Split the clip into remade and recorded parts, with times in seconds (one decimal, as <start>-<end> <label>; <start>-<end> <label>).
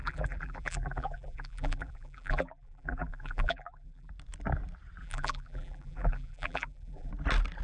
0.0-4.1 remade; 4.1-5.0 recorded; 5.0-7.1 remade; 7.1-7.6 recorded